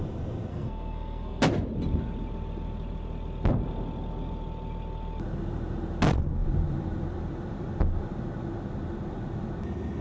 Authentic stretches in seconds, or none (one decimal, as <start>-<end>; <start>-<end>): 0.0-0.5; 1.4-10.0

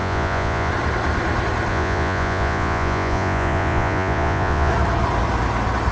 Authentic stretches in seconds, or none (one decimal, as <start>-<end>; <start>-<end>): 0.7-1.7; 4.7-5.9